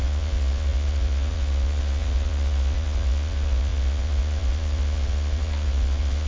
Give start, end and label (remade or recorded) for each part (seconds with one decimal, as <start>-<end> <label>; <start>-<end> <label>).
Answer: 0.0-6.3 remade